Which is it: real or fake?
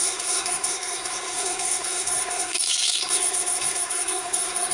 fake